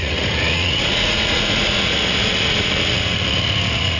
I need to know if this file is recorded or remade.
remade